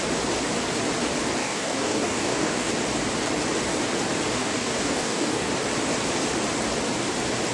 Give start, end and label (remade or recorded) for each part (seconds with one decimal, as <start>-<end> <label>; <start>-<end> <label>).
0.0-1.4 recorded; 1.4-2.7 remade; 2.7-4.4 recorded; 4.4-5.5 remade; 5.5-7.5 recorded